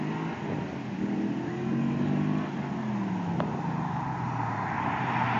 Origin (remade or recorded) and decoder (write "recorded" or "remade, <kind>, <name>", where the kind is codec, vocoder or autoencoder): recorded